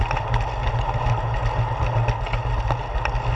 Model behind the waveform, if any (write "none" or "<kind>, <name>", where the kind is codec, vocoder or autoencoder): none